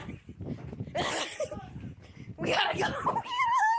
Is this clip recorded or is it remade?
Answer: recorded